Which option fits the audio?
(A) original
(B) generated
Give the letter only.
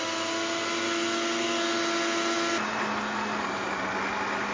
A